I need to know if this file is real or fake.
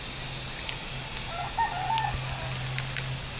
real